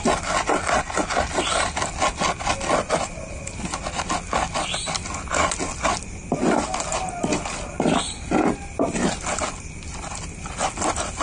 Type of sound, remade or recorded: recorded